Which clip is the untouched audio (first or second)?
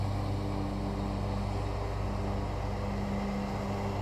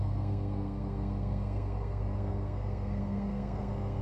first